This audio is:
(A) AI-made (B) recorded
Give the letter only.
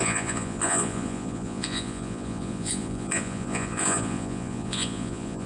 A